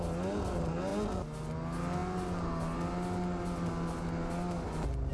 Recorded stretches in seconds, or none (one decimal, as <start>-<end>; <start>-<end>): 0.0-5.1